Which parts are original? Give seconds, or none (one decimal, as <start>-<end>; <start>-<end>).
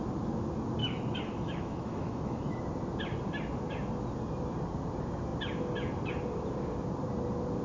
0.0-0.8; 2.6-7.6